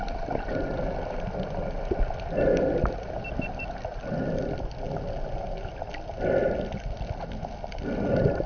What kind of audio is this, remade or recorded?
recorded